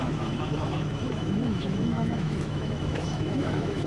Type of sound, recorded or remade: remade